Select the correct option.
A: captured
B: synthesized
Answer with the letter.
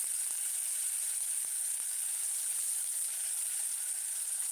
A